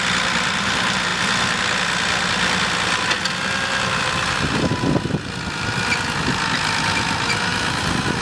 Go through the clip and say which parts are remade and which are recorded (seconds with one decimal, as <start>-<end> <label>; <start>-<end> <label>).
0.0-8.2 recorded